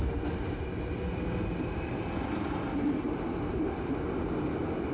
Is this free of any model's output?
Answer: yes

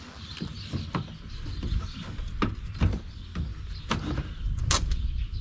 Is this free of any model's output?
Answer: yes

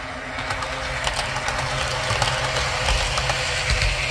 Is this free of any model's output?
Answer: yes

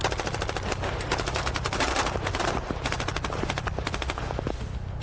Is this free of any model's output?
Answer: yes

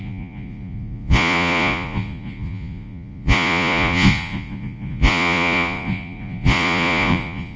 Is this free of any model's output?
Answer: no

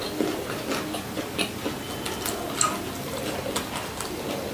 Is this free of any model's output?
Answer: yes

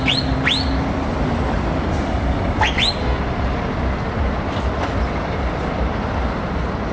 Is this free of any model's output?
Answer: yes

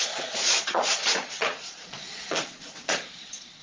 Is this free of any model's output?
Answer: no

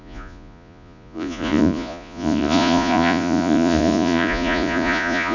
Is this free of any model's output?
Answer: no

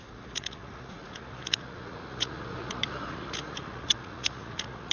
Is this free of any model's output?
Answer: no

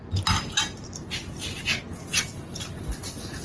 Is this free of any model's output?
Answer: yes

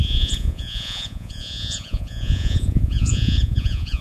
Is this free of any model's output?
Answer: no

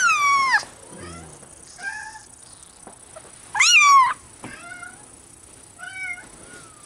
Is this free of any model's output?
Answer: yes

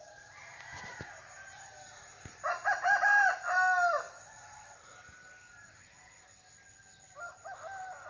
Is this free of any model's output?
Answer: yes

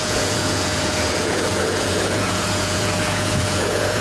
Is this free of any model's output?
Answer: no